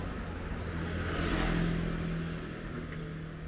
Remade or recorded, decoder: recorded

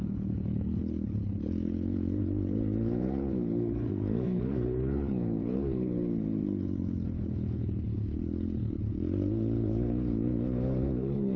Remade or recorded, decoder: remade, codec, HILCodec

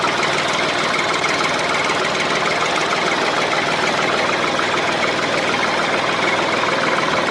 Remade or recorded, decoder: recorded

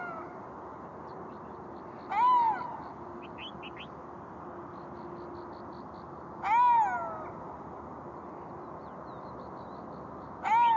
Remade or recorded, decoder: recorded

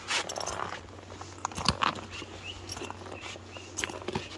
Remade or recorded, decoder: recorded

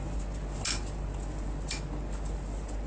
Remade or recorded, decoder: recorded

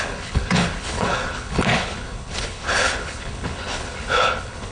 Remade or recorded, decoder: remade, codec, HILCodec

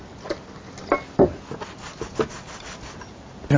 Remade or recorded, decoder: recorded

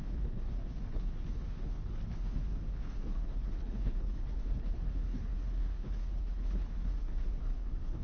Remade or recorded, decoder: remade, codec, HILCodec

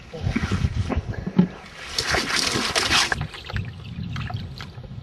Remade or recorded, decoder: recorded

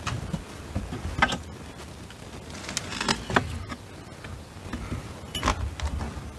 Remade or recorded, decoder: recorded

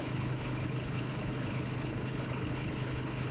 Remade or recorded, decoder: remade, codec, HILCodec